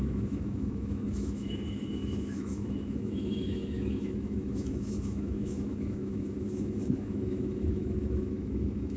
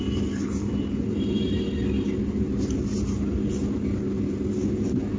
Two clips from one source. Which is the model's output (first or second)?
first